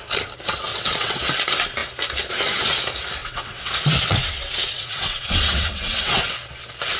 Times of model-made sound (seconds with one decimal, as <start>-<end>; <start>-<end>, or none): 0.7-1.2; 3.2-6.3